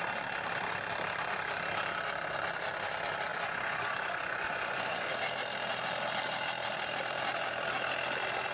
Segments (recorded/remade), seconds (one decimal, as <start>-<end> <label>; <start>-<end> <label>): 0.0-3.3 recorded; 3.3-5.1 remade; 5.1-8.5 recorded